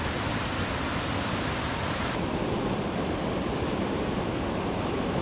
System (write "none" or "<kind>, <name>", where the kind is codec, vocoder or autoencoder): none